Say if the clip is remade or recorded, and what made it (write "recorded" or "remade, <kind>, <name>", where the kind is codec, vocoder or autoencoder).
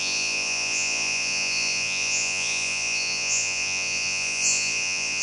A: remade, vocoder, Vocos